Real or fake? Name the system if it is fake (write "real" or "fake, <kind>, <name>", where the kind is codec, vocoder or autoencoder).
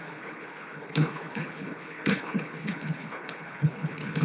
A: fake, codec, HILCodec